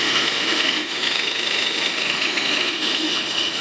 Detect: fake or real fake